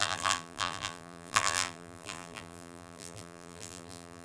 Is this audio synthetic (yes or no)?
yes